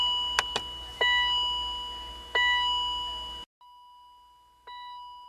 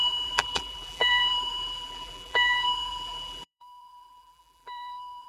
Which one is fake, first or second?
second